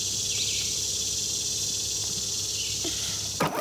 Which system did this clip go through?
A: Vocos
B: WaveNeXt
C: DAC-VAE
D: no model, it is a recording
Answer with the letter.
D